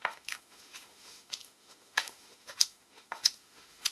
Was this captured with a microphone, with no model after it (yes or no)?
no